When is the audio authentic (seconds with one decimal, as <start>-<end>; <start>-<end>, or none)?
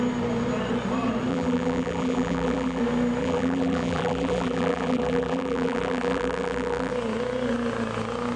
0.0-1.3; 2.8-3.2; 6.9-8.4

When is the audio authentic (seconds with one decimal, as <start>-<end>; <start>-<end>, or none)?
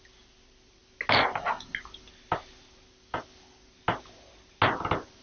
0.0-5.2